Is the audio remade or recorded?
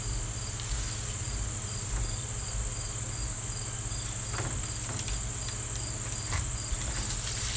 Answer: recorded